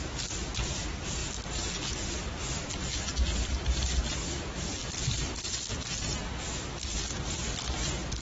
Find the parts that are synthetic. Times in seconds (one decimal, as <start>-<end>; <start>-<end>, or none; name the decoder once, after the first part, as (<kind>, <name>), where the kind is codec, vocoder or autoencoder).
1.2-4.0 (vocoder, BigVGAN v2); 4.8-5.5